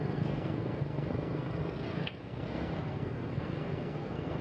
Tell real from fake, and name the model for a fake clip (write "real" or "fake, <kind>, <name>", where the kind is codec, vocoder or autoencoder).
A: fake, codec, SNAC